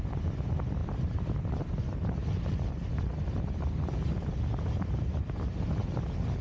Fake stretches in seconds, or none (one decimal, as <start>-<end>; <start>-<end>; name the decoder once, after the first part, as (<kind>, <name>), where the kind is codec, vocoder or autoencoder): 0.8-1.8 (vocoder, BigVGAN v2); 2.2-5.6